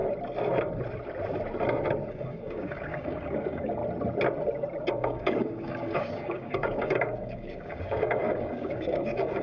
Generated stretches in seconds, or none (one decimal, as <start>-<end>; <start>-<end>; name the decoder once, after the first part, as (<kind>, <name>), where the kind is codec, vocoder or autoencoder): 2.1-3.8 (codec, DAC); 4.9-9.4